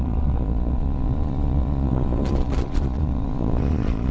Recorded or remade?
remade